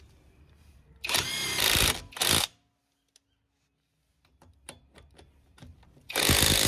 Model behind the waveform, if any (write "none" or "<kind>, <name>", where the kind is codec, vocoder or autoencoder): none